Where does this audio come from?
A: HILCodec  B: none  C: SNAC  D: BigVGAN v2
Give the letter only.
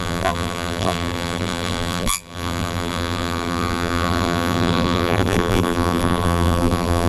D